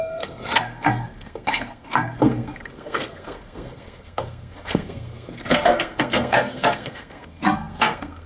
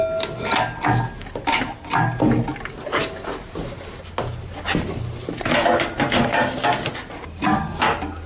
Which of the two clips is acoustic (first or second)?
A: second